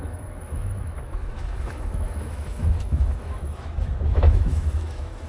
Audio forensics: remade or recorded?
remade